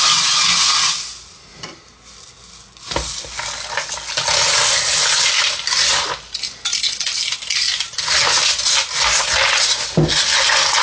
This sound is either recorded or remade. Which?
recorded